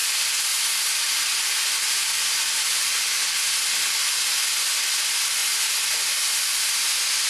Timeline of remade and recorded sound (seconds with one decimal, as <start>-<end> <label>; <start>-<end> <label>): 0.0-7.3 recorded